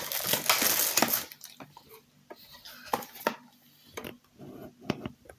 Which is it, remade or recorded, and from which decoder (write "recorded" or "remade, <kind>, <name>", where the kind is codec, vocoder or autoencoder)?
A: recorded